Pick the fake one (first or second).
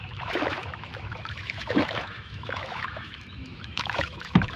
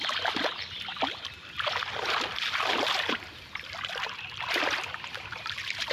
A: first